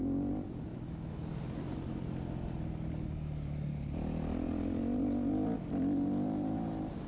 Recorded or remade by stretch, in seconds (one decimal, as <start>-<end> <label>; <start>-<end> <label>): 0.0-0.7 recorded; 0.7-1.3 remade; 1.3-7.1 recorded